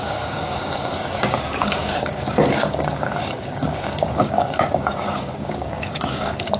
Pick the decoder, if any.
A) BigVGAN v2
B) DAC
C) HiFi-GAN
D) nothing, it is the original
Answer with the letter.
B